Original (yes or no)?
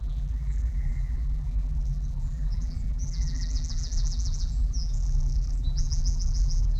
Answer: no